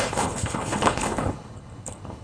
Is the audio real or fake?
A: fake